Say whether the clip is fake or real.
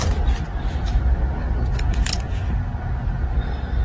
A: real